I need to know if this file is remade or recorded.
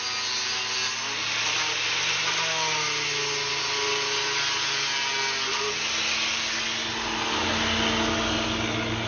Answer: recorded